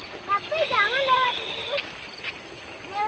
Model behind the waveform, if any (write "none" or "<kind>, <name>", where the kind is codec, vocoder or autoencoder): none